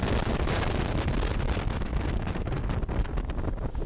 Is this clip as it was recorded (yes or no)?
yes